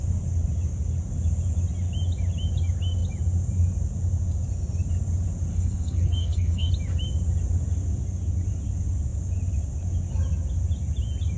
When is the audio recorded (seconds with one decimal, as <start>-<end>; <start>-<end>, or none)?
0.0-5.5; 6.7-11.4